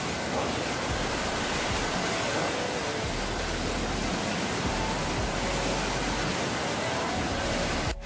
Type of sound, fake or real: real